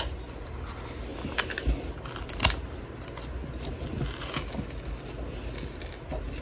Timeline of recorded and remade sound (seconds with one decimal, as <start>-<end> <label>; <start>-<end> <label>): 0.0-6.4 recorded